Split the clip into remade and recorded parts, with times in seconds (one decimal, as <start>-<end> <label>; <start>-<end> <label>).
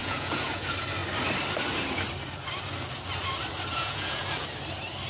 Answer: 0.0-0.6 remade; 0.6-3.7 recorded; 3.7-4.2 remade; 4.2-5.1 recorded